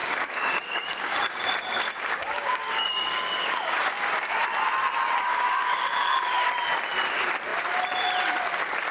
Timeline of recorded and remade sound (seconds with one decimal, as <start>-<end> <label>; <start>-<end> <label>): 0.0-4.3 remade; 4.3-5.3 recorded; 5.3-6.5 remade; 6.5-8.9 recorded